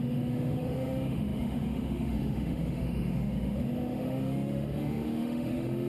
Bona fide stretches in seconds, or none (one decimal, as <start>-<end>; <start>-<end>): none